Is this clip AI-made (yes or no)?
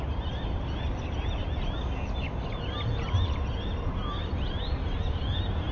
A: no